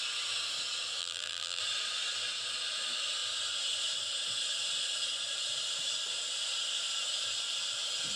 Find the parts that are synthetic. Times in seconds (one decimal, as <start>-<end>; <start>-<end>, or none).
1.0-1.6